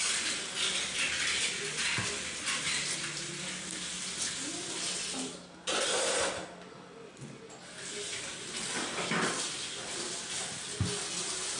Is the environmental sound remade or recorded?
recorded